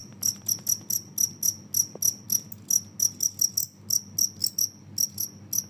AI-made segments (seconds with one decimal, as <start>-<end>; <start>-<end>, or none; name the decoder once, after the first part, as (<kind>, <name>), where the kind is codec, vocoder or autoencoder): none